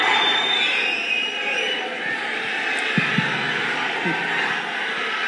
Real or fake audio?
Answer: real